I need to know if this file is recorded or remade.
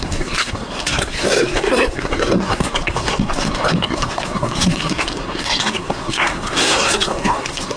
remade